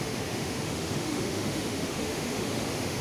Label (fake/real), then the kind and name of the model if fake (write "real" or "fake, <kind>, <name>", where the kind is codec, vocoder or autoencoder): fake, autoencoder, DAC-VAE